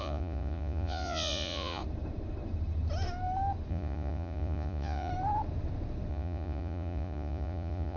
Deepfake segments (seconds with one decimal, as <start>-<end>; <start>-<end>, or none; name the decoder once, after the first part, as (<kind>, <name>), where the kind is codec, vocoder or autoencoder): 0.0-1.8 (vocoder, Vocos); 3.7-5.1; 6.1-8.0